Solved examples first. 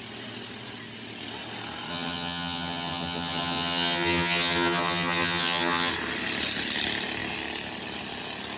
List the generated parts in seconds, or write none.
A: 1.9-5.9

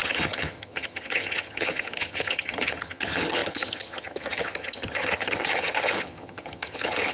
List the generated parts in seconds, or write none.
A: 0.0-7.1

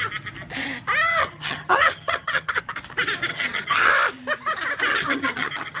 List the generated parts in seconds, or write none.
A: 1.2-2.6; 3.3-3.9; 4.9-5.8

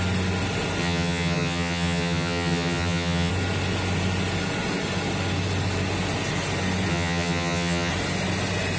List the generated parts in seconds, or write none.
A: 0.8-3.3; 6.9-7.9

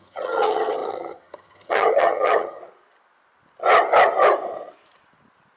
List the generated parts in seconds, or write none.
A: 0.0-2.6